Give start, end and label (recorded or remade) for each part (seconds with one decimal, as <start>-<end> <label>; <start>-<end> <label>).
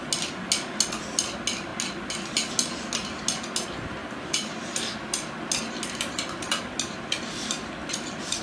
0.0-8.4 recorded